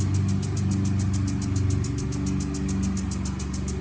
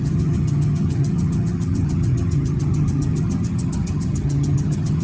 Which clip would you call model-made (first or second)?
second